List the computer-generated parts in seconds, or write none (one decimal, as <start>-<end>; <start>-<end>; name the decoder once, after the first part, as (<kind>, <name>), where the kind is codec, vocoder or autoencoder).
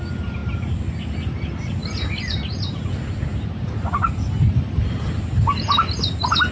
none